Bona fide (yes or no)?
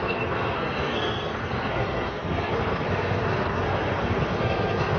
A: no